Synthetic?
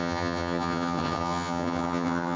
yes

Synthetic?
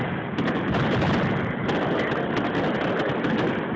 no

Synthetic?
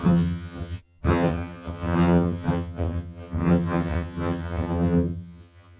yes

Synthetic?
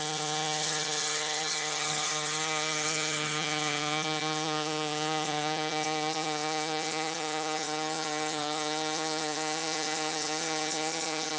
yes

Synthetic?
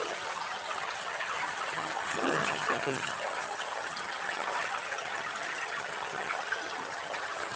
yes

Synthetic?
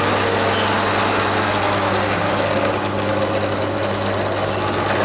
no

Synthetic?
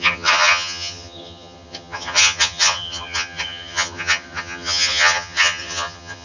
yes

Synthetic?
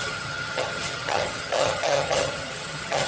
yes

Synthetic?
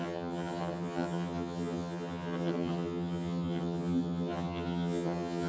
yes